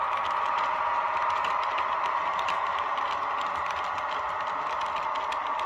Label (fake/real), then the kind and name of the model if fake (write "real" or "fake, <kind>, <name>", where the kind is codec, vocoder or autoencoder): real